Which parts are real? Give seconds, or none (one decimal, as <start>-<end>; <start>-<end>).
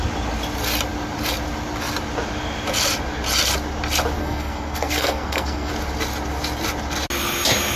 0.0-4.2; 5.7-7.8